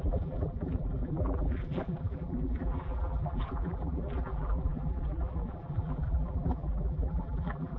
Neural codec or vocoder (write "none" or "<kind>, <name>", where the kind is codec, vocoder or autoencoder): vocoder, BigVGAN v2